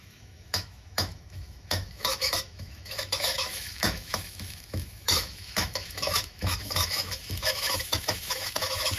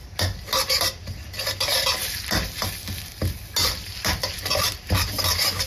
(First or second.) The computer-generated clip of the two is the first